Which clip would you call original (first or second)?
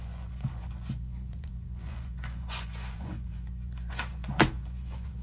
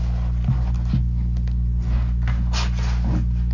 second